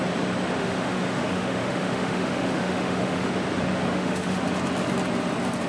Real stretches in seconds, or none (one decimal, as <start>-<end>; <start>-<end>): 0.0-0.6; 3.3-3.9; 4.4-5.7